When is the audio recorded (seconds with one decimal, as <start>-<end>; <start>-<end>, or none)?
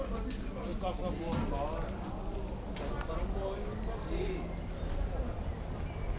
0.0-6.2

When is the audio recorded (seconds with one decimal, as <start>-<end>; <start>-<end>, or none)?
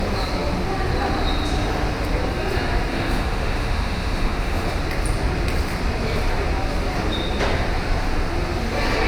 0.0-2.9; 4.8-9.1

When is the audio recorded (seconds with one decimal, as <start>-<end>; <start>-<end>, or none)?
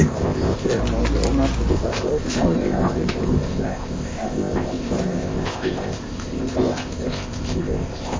0.8-1.7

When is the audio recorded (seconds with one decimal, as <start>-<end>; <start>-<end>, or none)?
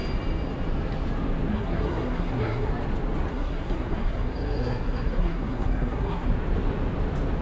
0.0-1.5; 2.7-3.3; 6.3-7.4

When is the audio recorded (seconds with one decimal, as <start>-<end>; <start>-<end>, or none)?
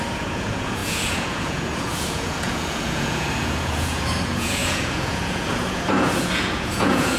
none